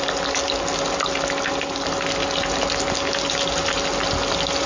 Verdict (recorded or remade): recorded